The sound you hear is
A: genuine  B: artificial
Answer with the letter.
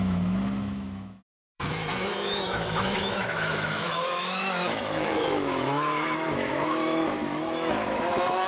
B